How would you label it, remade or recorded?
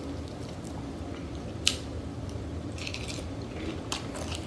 remade